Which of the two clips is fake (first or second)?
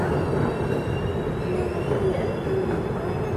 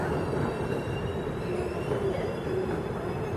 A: second